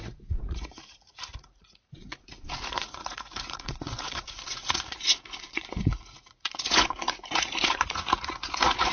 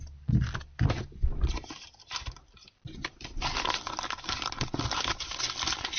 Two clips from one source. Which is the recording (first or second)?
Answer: second